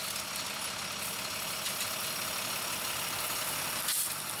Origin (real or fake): real